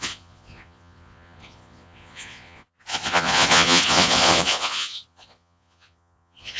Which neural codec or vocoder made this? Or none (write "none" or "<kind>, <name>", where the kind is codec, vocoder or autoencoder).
vocoder, Vocos